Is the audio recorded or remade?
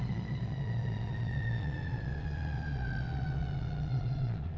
remade